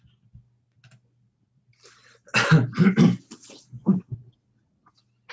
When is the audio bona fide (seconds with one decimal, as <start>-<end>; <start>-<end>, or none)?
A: 0.0-5.3